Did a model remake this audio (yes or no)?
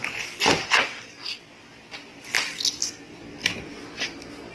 no